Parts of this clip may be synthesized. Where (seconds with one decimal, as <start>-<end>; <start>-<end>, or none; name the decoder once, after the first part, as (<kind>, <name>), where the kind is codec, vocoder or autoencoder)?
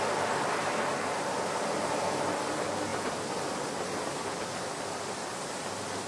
none